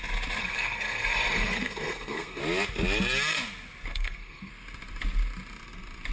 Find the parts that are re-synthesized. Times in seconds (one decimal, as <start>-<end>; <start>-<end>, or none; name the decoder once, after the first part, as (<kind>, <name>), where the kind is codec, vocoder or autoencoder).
0.4-2.4 (codec, SNAC); 3.9-4.5